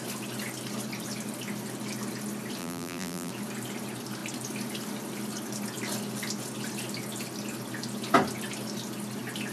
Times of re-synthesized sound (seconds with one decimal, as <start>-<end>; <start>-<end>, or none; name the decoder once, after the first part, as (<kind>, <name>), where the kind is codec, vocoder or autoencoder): 2.6-3.3 (vocoder, BigVGAN v2)